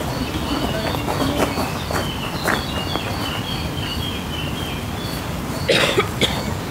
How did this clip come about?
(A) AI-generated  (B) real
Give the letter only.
B